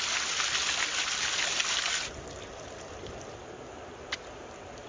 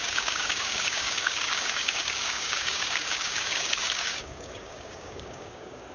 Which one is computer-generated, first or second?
second